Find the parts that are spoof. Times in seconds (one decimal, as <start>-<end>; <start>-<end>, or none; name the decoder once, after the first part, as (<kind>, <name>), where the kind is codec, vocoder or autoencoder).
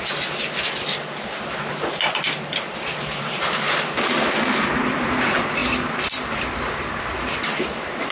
5.6-7.0 (vocoder, BigVGAN v2)